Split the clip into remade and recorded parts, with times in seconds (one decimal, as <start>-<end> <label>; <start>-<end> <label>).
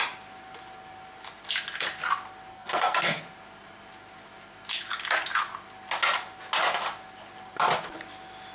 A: 0.0-2.5 recorded; 2.5-3.2 remade; 3.2-8.5 recorded